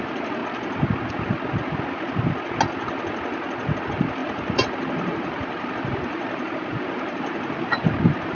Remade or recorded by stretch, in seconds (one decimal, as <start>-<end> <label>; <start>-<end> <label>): 0.0-0.4 remade; 0.4-3.8 recorded; 3.8-8.3 remade